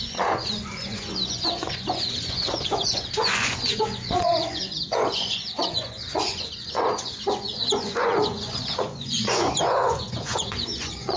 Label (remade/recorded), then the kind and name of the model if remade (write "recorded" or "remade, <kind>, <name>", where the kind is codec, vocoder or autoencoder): remade, vocoder, Vocos